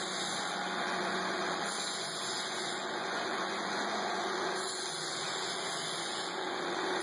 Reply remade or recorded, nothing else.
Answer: remade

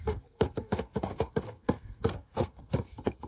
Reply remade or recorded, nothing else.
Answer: remade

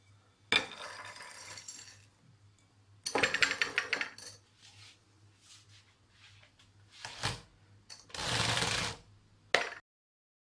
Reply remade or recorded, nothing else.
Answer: recorded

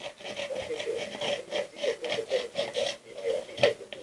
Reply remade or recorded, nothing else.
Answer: recorded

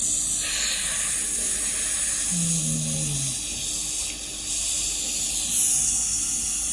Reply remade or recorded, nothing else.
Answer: recorded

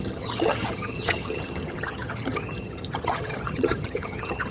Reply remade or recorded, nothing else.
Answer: remade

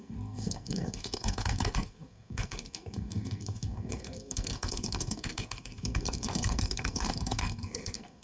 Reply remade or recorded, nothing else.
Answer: remade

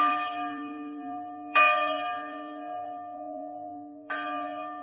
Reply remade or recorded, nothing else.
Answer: remade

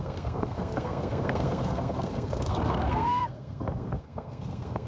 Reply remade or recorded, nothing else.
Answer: remade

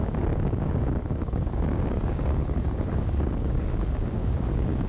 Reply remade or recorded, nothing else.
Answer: remade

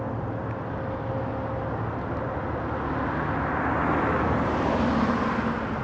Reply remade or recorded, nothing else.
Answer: recorded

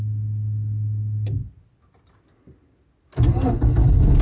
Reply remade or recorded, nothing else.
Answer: recorded